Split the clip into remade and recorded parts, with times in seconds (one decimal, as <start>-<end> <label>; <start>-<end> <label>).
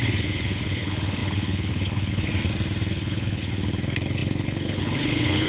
0.0-2.3 remade; 2.3-2.9 recorded; 2.9-5.5 remade